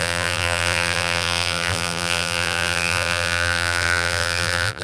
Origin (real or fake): fake